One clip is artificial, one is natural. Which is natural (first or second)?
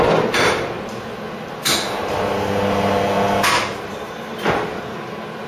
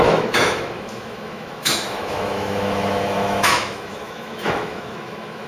first